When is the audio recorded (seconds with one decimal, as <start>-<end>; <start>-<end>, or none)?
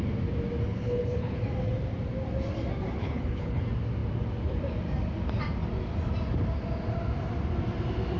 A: 0.0-0.7; 1.4-3.0; 3.6-8.2